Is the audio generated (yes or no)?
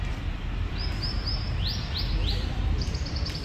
yes